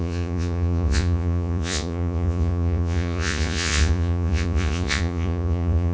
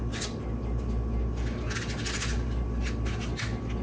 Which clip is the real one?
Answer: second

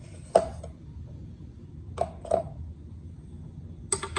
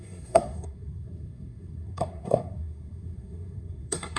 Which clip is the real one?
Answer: first